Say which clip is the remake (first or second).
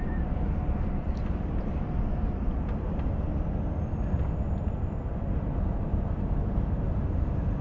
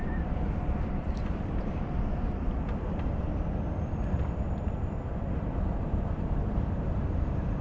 second